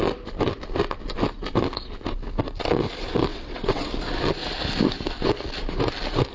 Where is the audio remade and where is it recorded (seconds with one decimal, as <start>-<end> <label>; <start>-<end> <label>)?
0.0-3.3 recorded; 3.3-3.9 remade; 3.9-6.3 recorded